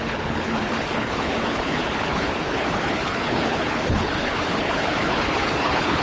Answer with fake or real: fake